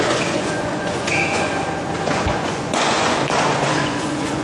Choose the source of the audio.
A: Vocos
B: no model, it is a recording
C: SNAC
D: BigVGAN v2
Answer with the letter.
A